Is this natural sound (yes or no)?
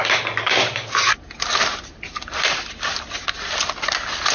yes